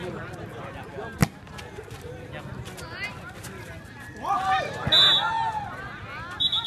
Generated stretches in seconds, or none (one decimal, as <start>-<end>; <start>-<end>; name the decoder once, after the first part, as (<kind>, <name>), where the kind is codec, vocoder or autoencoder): none